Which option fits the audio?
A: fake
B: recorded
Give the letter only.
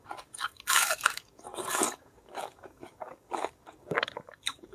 A